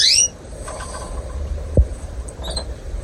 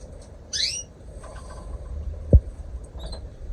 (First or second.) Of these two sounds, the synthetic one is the second